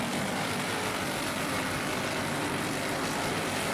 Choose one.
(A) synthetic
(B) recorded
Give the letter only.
B